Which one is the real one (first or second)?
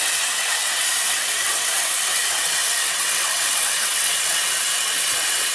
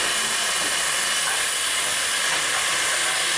second